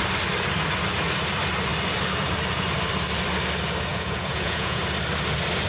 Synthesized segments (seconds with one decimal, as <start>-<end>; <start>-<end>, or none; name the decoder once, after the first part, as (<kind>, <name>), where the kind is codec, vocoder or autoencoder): 3.9-4.8 (vocoder, Vocos)